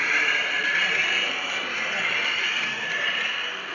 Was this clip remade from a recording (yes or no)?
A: no